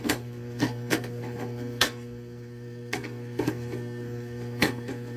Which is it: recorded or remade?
remade